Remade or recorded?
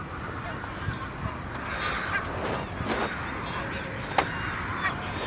recorded